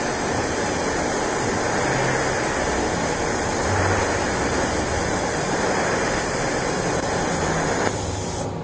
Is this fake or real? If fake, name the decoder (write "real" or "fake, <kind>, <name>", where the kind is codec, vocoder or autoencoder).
real